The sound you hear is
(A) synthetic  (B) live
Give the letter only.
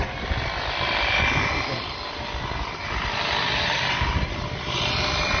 B